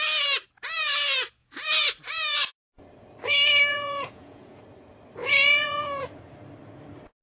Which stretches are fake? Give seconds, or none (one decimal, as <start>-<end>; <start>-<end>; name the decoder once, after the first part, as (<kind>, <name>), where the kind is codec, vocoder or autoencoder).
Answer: 1.4-2.5 (vocoder, Vocos); 3.7-4.6; 5.2-6.2